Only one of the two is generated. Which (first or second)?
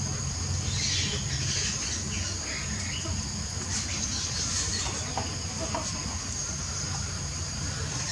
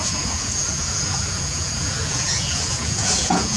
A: second